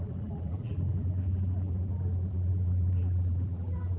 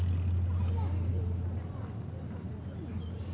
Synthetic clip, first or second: first